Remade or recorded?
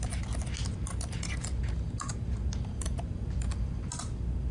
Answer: recorded